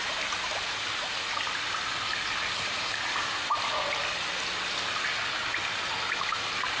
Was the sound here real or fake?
real